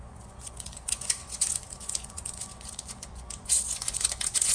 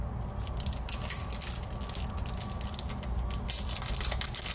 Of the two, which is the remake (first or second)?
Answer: first